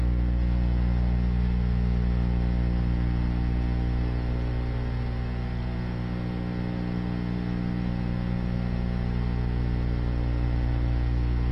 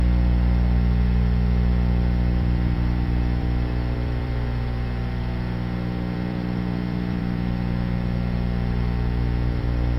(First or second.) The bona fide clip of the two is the first